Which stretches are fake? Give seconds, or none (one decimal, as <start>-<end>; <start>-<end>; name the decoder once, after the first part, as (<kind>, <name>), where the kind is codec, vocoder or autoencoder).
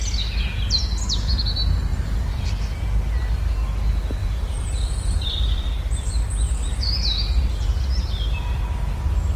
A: 1.9-2.5 (vocoder, BigVGAN v2); 4.2-6.1